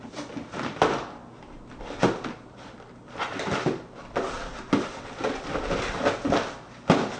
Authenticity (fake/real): real